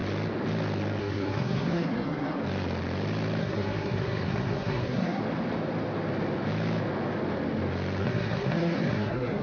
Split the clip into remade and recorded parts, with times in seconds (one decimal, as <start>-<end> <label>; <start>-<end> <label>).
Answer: 0.0-1.0 recorded; 1.0-2.4 remade; 2.4-3.4 recorded; 3.4-5.2 remade; 5.2-8.0 recorded; 8.0-9.4 remade